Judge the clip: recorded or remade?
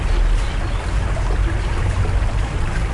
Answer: recorded